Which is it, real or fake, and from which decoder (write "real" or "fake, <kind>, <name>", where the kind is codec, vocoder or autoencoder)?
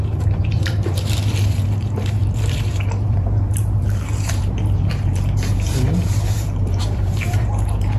fake, vocoder, BigVGAN v2